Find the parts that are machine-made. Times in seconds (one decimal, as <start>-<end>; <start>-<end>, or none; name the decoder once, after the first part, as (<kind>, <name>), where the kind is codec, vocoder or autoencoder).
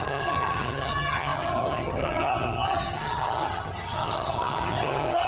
0.0-5.3 (vocoder, HiFi-GAN)